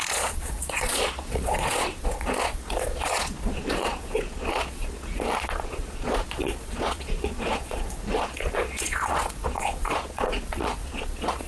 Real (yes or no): no